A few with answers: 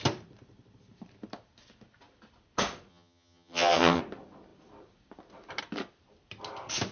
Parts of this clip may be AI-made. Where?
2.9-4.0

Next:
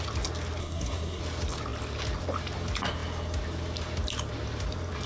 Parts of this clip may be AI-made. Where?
0.6-1.2

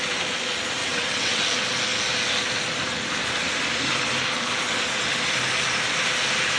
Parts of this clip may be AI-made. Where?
0.8-1.4

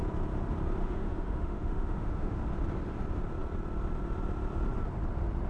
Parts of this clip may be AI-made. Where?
0.8-2.4

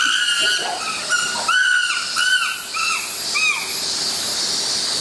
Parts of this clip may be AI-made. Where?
none

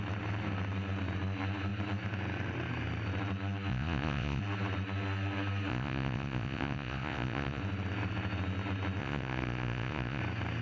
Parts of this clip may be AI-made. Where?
3.7-4.4; 5.7-7.6; 9.0-10.2

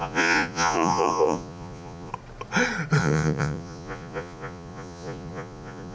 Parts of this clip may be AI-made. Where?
0.0-2.1; 3.0-5.9

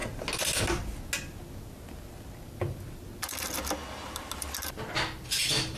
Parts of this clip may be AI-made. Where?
none